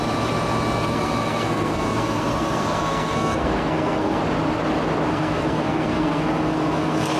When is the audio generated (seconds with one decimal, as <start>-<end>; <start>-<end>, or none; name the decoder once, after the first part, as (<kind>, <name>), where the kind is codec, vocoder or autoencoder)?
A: 0.9-4.2 (codec, SNAC); 5.1-7.2